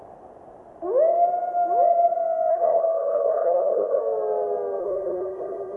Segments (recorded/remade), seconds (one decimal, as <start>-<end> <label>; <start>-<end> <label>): 0.0-2.5 recorded; 2.5-4.0 remade; 4.0-4.8 recorded; 4.8-5.8 remade